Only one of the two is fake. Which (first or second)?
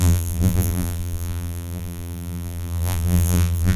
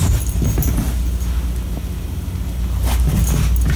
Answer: first